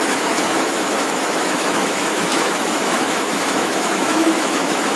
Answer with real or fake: fake